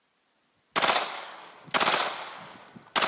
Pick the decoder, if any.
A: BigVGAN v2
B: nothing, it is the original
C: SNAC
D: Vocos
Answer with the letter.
B